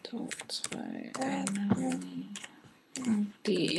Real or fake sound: fake